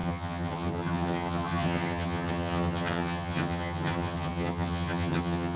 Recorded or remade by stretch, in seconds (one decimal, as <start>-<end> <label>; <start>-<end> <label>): 0.0-5.6 remade